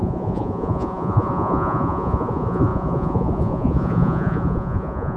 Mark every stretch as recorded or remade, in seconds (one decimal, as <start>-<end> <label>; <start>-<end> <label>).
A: 0.0-5.2 remade